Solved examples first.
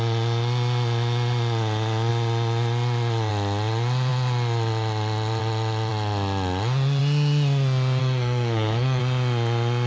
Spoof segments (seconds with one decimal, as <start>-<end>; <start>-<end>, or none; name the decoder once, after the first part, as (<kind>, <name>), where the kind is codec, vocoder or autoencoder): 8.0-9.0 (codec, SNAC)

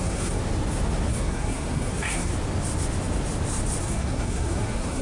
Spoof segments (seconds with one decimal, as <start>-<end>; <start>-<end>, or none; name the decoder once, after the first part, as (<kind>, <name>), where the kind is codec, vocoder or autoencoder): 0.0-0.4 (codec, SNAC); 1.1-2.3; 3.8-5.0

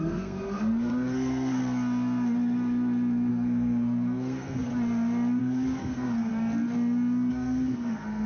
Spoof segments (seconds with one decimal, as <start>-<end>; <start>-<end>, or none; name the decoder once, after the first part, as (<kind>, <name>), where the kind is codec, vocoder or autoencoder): 0.0-1.6 (codec, SNAC); 3.3-4.7; 5.4-6.3; 7.3-8.3